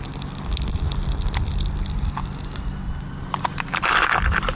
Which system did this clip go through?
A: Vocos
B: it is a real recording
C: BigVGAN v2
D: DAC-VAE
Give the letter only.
B